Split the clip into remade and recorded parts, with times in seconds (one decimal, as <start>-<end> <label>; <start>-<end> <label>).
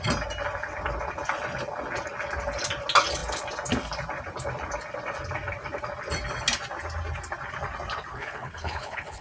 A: 0.0-8.1 recorded; 8.1-9.2 remade